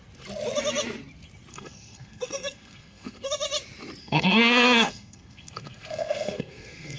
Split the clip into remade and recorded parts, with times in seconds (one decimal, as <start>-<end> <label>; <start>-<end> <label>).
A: 0.0-1.5 recorded; 1.5-3.3 remade; 3.3-4.0 recorded; 4.0-7.0 remade

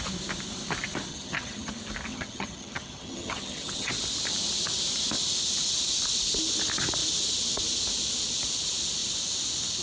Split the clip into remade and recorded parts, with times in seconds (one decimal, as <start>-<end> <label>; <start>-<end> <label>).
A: 0.0-1.1 recorded; 1.1-1.7 remade; 1.7-2.1 recorded; 2.1-3.9 remade; 3.9-9.8 recorded

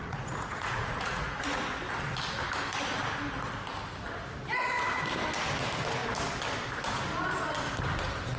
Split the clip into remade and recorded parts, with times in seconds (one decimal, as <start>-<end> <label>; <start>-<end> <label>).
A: 0.0-1.7 remade; 1.7-8.4 recorded

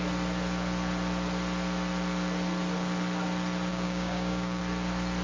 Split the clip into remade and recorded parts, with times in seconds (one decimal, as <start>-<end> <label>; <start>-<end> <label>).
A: 0.0-3.7 recorded; 3.7-4.6 remade; 4.6-5.2 recorded

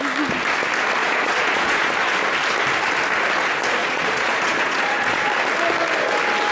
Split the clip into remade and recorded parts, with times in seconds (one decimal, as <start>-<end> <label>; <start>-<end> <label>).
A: 0.0-1.0 recorded; 1.0-1.9 remade; 1.9-3.8 recorded; 3.8-5.3 remade; 5.3-6.5 recorded

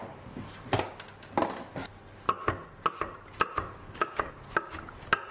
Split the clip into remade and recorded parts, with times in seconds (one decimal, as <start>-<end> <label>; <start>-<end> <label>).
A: 0.0-3.8 recorded; 3.8-4.3 remade; 4.3-5.3 recorded

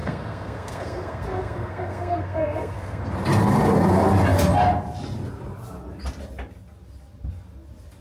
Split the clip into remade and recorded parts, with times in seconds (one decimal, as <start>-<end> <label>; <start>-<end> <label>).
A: 0.0-3.0 remade; 3.0-8.0 recorded